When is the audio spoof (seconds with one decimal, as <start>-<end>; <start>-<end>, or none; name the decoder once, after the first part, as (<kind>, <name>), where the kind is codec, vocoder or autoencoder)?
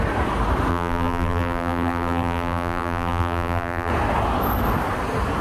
0.7-3.9 (vocoder, BigVGAN v2)